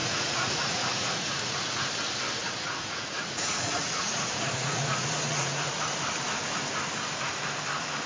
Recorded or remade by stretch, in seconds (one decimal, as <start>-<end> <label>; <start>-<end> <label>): 0.0-1.9 remade; 1.9-2.4 recorded; 2.4-5.9 remade; 5.9-8.1 recorded